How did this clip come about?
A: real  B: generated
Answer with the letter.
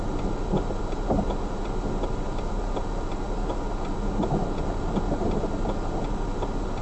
A